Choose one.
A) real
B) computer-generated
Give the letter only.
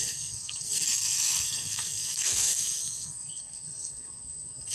B